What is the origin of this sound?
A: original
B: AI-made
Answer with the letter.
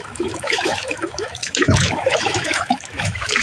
B